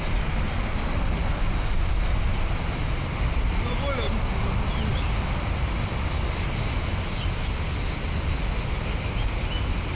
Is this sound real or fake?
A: real